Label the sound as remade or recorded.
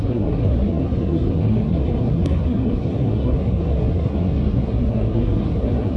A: remade